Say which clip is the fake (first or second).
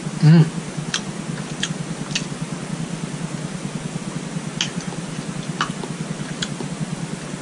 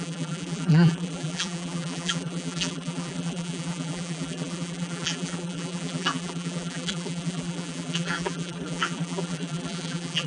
second